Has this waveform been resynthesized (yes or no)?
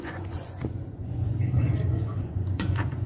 yes